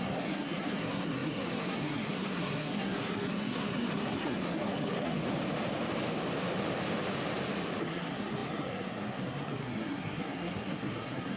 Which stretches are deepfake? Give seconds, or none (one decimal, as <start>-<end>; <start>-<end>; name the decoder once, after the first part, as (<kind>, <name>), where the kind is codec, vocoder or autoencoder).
0.0-5.2 (codec, SNAC); 7.8-11.4